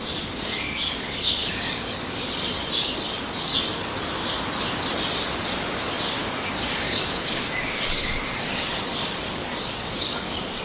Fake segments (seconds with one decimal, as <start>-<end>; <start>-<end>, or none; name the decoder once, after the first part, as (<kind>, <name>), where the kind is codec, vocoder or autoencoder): 0.0-3.9 (codec, DAC); 6.2-10.6

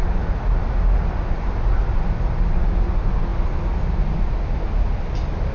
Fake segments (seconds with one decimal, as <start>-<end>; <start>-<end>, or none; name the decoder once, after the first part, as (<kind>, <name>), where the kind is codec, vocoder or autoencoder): none

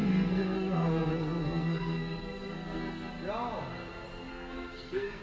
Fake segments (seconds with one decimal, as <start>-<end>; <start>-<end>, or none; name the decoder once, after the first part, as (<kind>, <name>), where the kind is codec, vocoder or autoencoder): 0.0-3.1 (codec, SNAC); 4.3-5.2